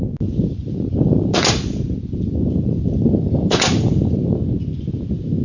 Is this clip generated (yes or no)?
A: no